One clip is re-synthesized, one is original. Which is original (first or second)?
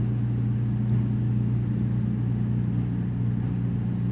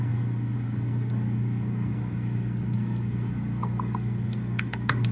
first